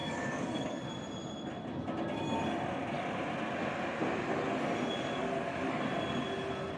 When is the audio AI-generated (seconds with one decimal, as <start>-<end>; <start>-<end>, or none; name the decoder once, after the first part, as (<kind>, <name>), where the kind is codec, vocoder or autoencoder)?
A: 0.0-0.8 (codec, DAC); 5.2-5.8